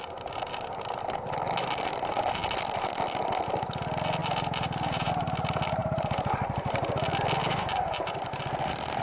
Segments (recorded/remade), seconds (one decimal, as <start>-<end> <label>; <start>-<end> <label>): 0.0-4.2 recorded; 4.2-5.1 remade; 5.1-5.8 recorded; 5.8-6.9 remade; 6.9-7.4 recorded; 7.4-8.4 remade; 8.4-9.0 recorded

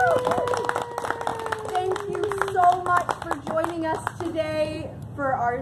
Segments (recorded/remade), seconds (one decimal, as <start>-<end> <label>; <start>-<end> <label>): 0.0-5.6 recorded

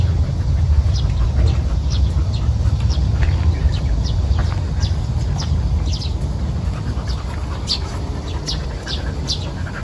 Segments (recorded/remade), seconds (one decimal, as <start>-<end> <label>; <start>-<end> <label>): 0.0-4.4 remade; 4.4-7.8 recorded; 7.8-9.8 remade

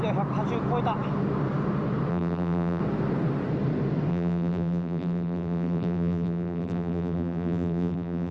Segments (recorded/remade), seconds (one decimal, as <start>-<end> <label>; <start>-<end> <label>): 0.0-2.1 recorded; 2.1-2.8 remade; 2.8-4.1 recorded; 4.1-8.3 remade

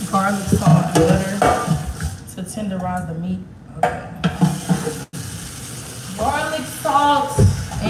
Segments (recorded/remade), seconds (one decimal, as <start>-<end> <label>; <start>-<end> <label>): 0.0-7.9 recorded

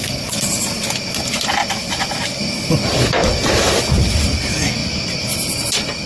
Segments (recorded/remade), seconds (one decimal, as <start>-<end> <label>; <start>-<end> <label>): 0.0-1.6 recorded; 1.6-2.4 remade; 2.4-3.2 recorded; 3.2-3.7 remade; 3.7-6.1 recorded

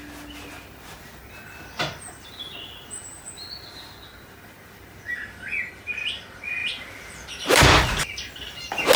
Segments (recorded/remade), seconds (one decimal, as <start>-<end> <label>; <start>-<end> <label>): 0.0-6.6 recorded; 6.6-8.0 remade; 8.0-9.0 recorded